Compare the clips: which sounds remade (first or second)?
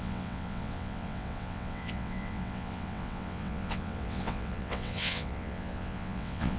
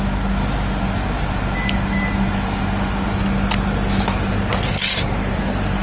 first